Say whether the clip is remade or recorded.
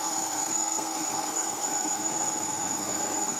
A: remade